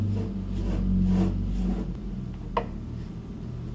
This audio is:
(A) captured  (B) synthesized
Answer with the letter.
A